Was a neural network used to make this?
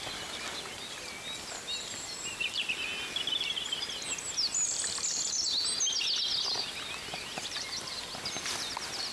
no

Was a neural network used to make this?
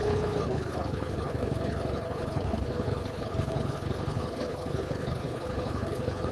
yes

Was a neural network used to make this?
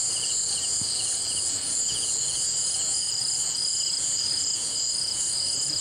yes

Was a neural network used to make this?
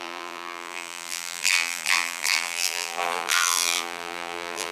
yes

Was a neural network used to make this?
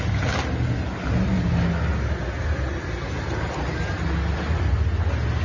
no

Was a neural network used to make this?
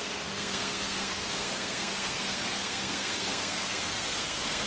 yes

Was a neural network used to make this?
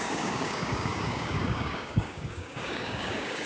yes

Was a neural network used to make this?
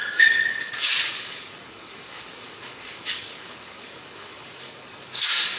yes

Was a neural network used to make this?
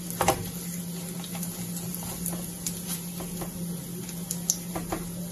no